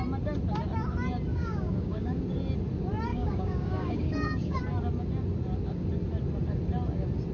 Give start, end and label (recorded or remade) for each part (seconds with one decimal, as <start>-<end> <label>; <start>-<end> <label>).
0.0-1.3 recorded; 1.3-2.2 remade; 2.2-3.1 recorded; 3.1-4.6 remade; 4.6-7.3 recorded